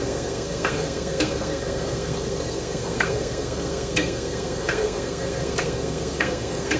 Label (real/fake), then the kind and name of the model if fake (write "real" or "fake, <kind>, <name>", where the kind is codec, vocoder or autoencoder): fake, codec, SNAC